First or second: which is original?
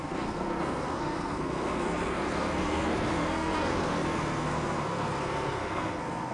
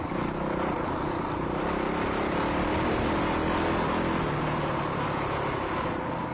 second